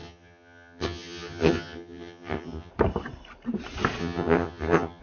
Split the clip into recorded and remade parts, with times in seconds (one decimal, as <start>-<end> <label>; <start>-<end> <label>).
0.0-2.7 remade; 2.7-4.0 recorded; 4.0-5.0 remade